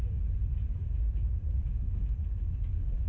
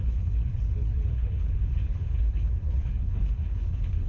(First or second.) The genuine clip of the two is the first